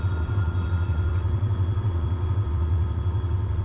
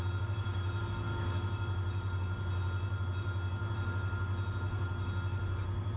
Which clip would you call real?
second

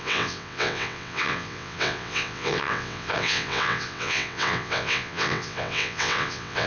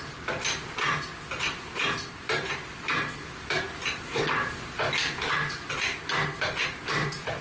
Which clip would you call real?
second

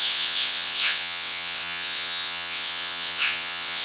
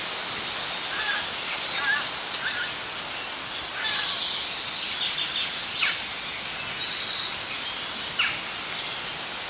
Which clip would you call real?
second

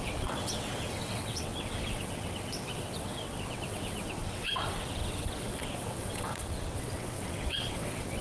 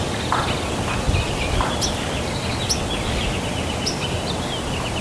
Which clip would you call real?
second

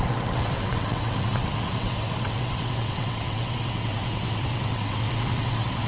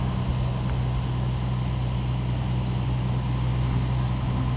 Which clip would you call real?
second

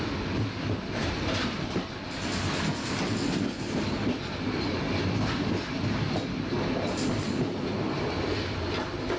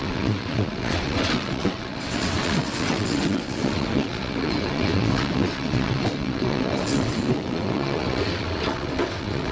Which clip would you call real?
first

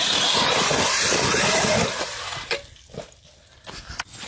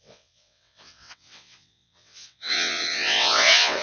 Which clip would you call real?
first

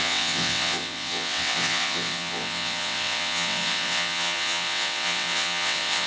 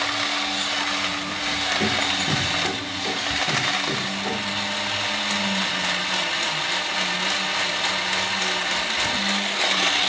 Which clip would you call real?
second